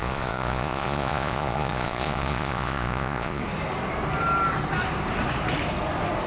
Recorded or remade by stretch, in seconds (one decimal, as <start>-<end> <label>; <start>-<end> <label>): 0.0-3.4 remade; 3.4-6.3 recorded